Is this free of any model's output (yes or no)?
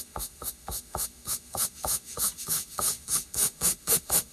no